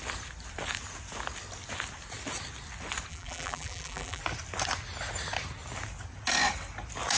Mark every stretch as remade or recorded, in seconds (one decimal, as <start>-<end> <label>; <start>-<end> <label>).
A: 0.0-3.1 recorded; 3.1-4.2 remade; 4.2-7.2 recorded